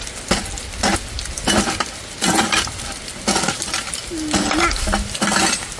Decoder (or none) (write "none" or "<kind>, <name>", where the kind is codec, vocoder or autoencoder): none